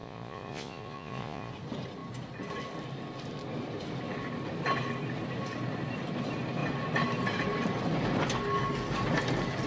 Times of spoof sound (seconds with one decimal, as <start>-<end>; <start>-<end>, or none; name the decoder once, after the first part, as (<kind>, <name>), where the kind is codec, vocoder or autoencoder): 0.0-1.5 (vocoder, Vocos)